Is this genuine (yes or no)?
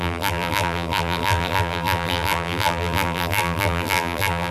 no